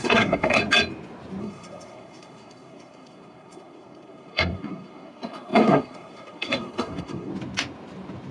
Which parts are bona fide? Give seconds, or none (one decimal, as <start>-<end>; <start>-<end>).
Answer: 0.6-1.4; 7.3-8.3

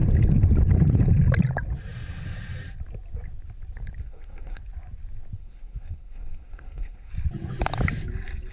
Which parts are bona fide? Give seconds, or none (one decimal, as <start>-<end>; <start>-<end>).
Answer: 0.0-4.0; 4.6-5.4; 7.1-8.5

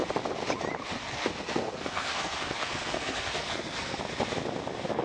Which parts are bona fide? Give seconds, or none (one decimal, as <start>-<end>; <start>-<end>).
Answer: 0.0-1.0; 4.0-5.0

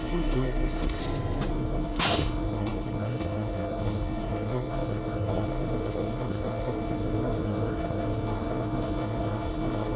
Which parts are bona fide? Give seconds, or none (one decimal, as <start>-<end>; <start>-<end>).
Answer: 1.0-1.5

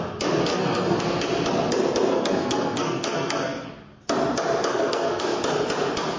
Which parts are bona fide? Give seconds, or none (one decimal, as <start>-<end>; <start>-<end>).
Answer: 0.0-0.5; 1.0-2.1; 3.7-4.7; 5.2-6.2